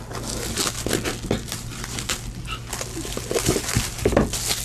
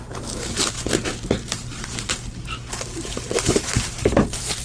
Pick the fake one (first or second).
second